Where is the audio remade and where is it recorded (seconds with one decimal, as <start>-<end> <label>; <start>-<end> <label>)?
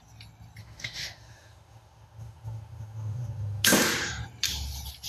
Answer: 0.0-0.6 recorded; 0.6-3.7 remade; 3.7-5.1 recorded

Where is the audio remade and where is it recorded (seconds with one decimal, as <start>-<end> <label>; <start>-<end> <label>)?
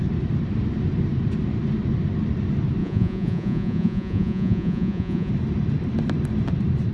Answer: 0.0-2.8 recorded; 2.8-5.3 remade; 5.3-6.9 recorded